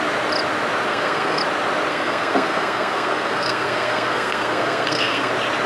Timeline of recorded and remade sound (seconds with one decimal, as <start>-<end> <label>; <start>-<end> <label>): 0.0-0.9 recorded; 0.9-1.4 remade; 1.4-1.9 recorded; 1.9-5.3 remade; 5.3-5.7 recorded